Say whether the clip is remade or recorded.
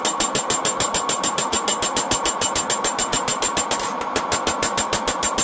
recorded